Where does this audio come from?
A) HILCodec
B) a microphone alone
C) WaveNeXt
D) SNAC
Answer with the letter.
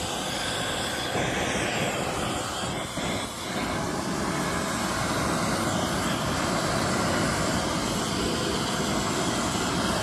B